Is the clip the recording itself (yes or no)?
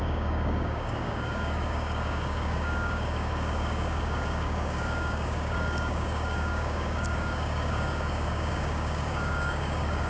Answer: no